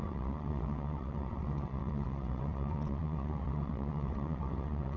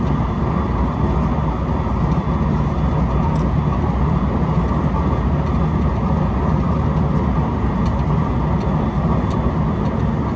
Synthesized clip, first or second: first